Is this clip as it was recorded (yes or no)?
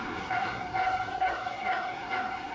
no